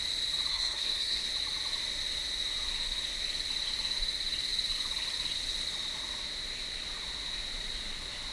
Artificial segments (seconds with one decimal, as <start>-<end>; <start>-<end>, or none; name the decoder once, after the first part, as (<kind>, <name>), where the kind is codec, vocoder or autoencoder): 0.5-1.3 (codec, SNAC)